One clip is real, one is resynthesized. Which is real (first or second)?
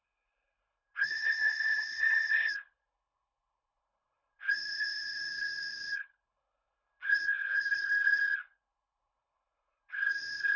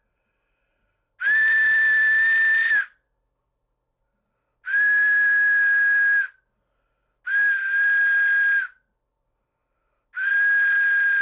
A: second